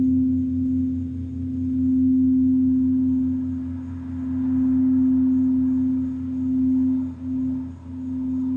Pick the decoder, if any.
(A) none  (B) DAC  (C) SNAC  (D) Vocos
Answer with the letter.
A